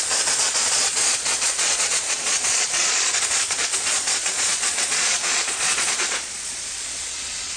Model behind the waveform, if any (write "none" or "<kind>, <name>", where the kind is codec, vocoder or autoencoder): vocoder, Vocos